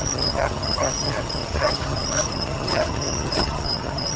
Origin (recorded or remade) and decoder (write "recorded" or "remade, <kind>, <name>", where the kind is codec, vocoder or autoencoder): remade, vocoder, HiFi-GAN